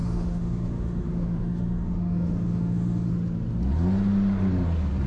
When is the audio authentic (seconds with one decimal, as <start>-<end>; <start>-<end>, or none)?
3.1-5.1